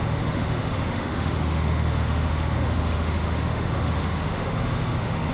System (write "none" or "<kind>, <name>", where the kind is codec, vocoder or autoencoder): autoencoder, DAC-VAE